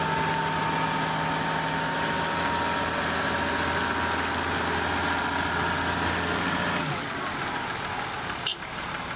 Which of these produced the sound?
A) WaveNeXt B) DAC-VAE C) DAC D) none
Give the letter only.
D